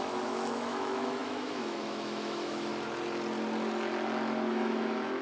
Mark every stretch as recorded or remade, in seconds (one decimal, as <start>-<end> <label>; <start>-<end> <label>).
0.0-2.7 remade; 2.7-4.5 recorded; 4.5-5.2 remade